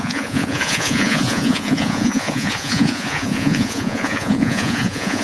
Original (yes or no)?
no